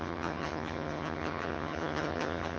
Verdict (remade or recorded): remade